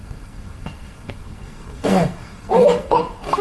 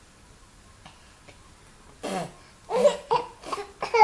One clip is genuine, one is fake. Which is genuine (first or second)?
second